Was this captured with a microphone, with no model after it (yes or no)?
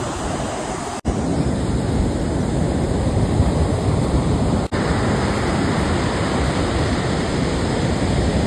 yes